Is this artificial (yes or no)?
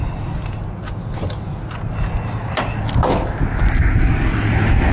no